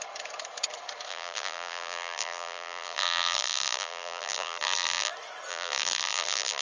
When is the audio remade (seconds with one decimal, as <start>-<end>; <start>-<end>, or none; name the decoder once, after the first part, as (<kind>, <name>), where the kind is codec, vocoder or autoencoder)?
1.1-5.1 (vocoder, BigVGAN v2); 5.5-6.6